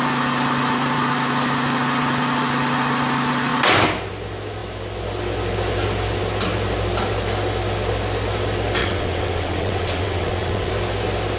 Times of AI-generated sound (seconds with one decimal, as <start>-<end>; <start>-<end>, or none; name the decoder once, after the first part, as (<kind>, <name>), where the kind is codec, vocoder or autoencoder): 8.8-10.7 (vocoder, WaveNeXt)